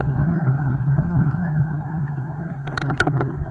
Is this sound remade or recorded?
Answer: remade